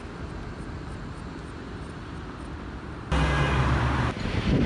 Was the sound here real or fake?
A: real